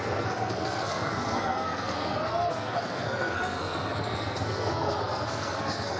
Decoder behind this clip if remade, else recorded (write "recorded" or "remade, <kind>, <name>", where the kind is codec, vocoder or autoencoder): remade, codec, SNAC